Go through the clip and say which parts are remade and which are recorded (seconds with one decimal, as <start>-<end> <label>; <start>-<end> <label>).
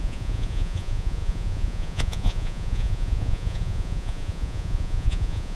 0.0-5.6 remade